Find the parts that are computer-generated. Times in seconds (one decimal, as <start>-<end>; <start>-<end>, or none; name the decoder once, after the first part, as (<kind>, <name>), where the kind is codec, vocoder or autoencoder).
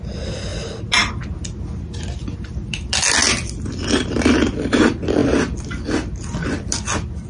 none